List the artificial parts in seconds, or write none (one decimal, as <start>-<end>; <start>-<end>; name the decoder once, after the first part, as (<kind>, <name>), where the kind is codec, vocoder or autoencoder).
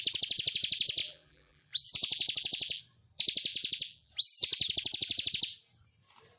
1.0-2.8 (vocoder, BigVGAN v2); 3.5-4.1